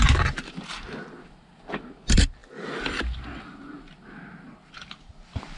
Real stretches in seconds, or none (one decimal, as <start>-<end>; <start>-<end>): 0.0-5.6